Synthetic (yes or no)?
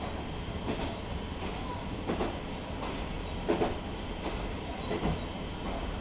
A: no